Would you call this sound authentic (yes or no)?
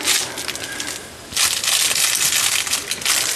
yes